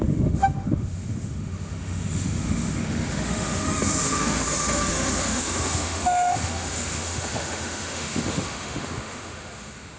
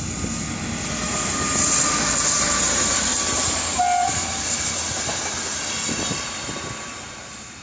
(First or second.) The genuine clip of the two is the second